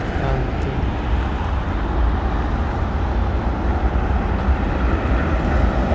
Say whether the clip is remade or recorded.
recorded